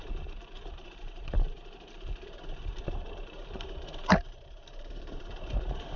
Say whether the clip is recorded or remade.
remade